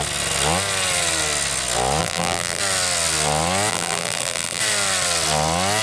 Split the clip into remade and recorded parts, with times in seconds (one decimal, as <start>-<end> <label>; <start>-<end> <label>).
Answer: 0.0-2.0 recorded; 2.0-2.6 remade; 2.6-3.7 recorded; 3.7-4.6 remade; 4.6-5.8 recorded